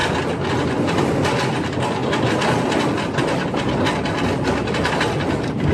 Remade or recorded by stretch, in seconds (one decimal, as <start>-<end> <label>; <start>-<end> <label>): 0.0-5.7 recorded